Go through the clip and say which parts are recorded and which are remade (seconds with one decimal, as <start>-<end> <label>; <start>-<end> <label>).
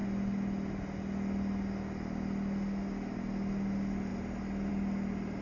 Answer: 0.0-5.4 recorded